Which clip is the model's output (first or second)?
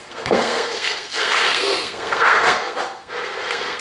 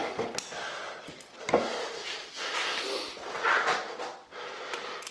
first